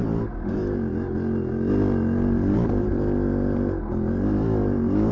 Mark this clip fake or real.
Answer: real